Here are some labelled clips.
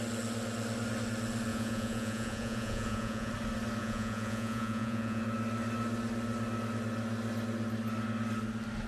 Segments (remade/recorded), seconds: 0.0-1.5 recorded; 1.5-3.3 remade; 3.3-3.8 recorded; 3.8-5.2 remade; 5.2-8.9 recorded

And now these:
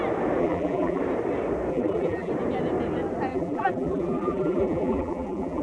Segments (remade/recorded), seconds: 0.0-0.4 recorded; 0.4-1.0 remade; 1.0-1.7 recorded; 1.7-2.3 remade; 2.3-3.3 recorded; 3.3-5.6 remade